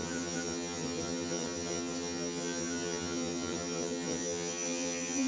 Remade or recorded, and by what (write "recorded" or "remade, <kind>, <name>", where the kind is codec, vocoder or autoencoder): remade, vocoder, HiFi-GAN